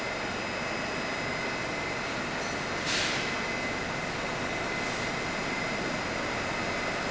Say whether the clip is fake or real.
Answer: real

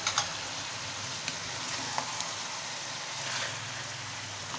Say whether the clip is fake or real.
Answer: real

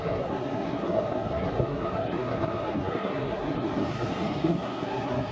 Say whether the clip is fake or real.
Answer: fake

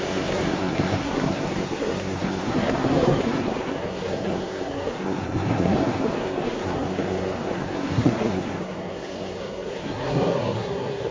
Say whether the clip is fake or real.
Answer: fake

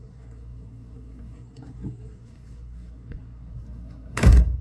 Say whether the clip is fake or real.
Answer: fake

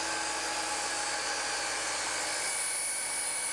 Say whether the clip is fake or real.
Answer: real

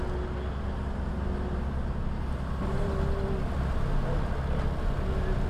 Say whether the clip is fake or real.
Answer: real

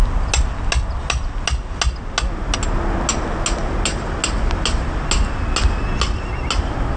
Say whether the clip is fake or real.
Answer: real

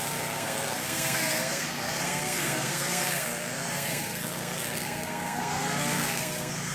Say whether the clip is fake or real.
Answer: fake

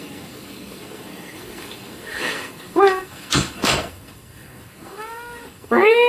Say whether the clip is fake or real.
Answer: fake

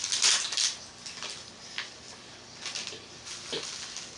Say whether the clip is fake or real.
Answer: real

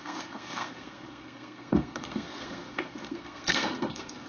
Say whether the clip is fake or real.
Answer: fake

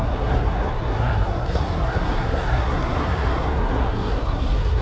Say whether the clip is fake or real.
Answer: fake